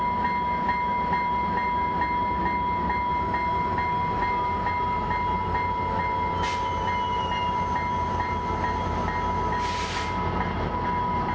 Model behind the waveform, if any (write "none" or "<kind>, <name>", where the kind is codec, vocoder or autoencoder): none